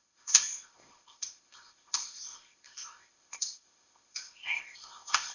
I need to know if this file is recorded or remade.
remade